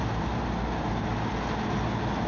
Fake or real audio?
real